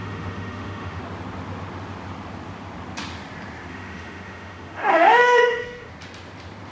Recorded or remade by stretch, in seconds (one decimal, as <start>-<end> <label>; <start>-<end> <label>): 0.0-1.0 remade; 1.0-3.7 recorded; 3.7-5.9 remade; 5.9-6.7 recorded